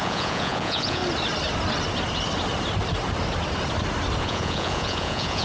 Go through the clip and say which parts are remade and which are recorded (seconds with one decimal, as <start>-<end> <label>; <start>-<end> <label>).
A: 0.0-1.0 remade; 1.0-4.2 recorded; 4.2-5.4 remade